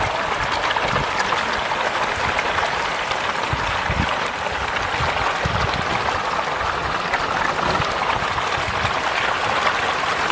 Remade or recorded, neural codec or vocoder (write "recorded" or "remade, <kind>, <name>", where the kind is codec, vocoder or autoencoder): recorded